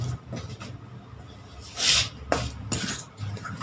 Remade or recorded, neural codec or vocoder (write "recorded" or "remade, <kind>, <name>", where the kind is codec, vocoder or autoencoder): recorded